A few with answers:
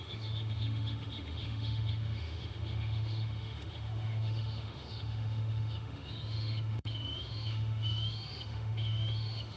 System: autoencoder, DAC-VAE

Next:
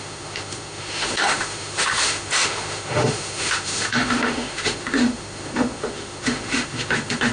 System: autoencoder, DAC-VAE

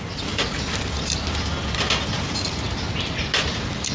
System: none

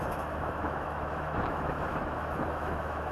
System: autoencoder, DAC-VAE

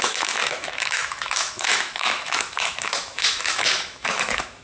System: autoencoder, DAC-VAE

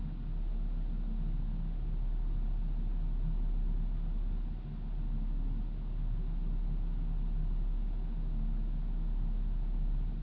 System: none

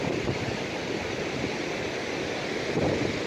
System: none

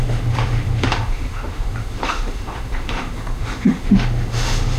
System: autoencoder, DAC-VAE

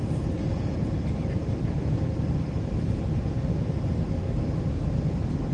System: none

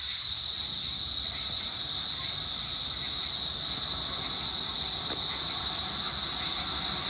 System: none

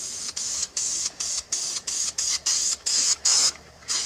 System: autoencoder, DAC-VAE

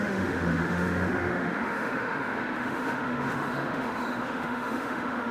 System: autoencoder, DAC-VAE